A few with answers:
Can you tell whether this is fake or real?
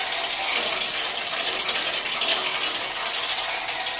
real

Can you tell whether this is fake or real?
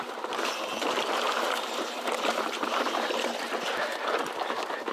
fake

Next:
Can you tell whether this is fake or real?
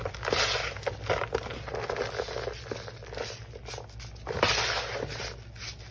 real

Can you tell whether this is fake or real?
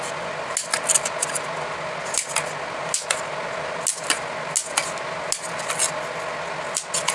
real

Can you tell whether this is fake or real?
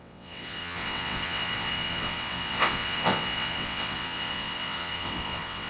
fake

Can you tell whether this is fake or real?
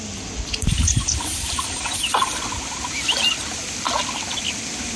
real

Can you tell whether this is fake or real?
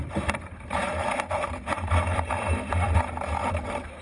fake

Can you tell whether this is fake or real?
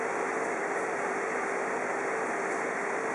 fake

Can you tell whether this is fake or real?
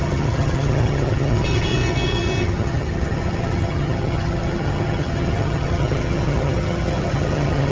fake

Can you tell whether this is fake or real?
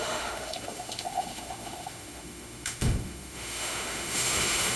fake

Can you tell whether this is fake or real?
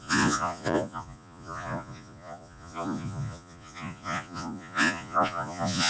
fake